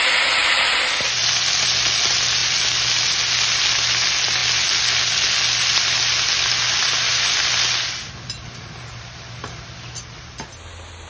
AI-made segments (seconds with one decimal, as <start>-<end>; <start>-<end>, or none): none